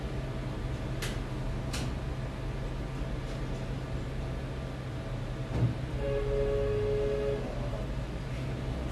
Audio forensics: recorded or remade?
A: recorded